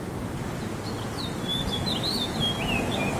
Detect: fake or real real